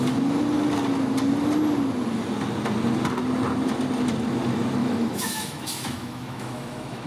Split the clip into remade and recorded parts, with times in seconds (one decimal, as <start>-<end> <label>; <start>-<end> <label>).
0.0-4.8 recorded; 4.8-7.1 remade